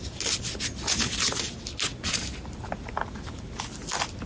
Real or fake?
real